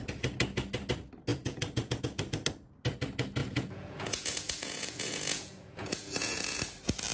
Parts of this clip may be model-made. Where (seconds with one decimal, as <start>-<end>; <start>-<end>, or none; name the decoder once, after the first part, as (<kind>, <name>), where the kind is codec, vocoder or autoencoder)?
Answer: 1.3-2.0 (vocoder, Vocos); 3.4-6.6